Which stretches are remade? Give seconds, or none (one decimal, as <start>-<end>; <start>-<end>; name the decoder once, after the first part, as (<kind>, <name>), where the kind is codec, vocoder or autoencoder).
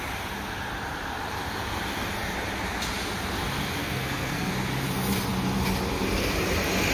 3.8-4.5 (codec, SNAC)